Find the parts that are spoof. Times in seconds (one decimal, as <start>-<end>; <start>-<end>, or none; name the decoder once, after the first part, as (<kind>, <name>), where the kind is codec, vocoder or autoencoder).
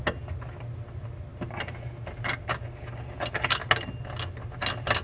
none